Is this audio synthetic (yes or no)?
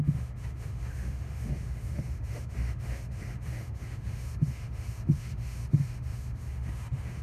yes